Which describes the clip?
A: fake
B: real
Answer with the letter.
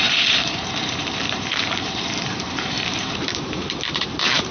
A